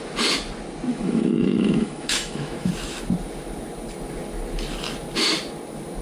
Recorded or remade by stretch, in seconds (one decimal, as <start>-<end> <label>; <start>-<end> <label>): 0.0-0.9 recorded; 0.9-2.7 remade; 2.7-6.0 recorded